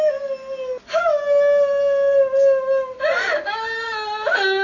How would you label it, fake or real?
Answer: real